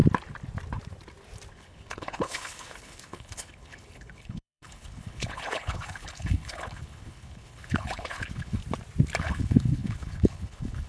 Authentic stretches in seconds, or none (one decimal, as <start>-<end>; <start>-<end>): 0.0-1.5; 8.6-9.2